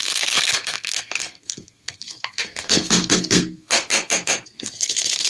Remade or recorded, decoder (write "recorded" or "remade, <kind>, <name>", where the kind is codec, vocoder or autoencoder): remade, codec, SNAC